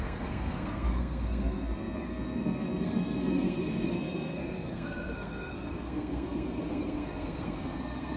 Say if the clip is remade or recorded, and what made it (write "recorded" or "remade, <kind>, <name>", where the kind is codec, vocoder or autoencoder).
remade, codec, SNAC